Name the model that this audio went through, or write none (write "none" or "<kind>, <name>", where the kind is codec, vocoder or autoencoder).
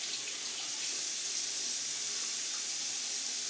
none